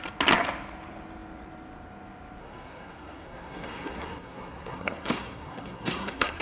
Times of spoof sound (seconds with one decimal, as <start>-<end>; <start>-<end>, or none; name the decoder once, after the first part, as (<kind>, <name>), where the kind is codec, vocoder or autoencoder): 2.4-6.4 (codec, SNAC)